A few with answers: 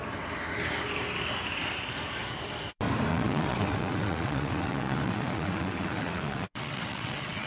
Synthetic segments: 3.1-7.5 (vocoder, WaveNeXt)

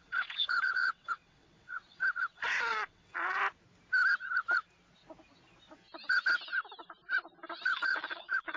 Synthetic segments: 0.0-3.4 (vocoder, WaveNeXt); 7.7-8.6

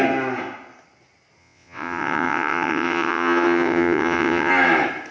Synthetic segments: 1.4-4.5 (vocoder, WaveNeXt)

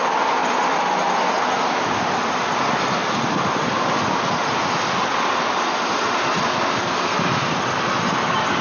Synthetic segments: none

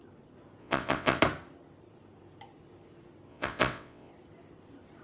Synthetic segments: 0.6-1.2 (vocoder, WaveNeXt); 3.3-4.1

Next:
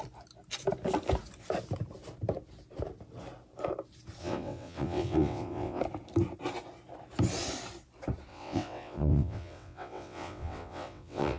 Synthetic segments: 4.2-5.8 (vocoder, WaveNeXt); 8.3-11.4

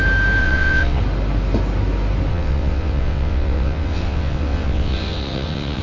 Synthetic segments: 0.4-1.0 (vocoder, WaveNeXt); 2.3-5.8

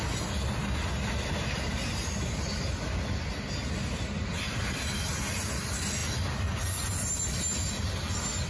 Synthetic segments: none